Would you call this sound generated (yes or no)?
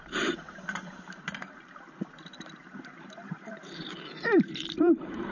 yes